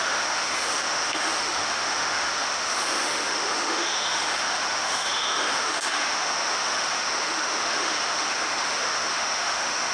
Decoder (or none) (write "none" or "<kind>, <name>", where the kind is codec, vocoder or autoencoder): autoencoder, DAC-VAE